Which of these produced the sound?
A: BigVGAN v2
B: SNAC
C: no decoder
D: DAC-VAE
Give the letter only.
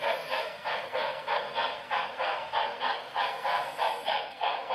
B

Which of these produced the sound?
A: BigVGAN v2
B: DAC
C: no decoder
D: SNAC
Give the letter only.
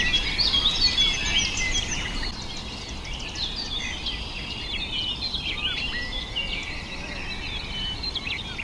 C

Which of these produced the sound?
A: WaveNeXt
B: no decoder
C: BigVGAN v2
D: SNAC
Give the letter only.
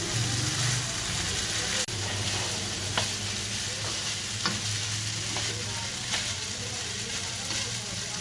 B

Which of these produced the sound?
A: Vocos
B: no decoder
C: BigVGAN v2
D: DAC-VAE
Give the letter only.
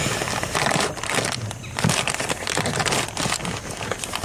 B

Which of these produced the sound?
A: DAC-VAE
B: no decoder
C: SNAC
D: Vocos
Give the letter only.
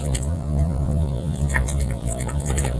D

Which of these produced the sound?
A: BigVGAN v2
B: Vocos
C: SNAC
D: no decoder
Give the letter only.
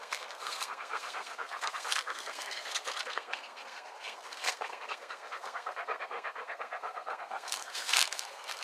C